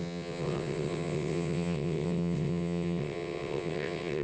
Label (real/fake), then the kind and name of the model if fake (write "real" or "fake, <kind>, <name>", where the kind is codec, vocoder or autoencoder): fake, vocoder, WaveNeXt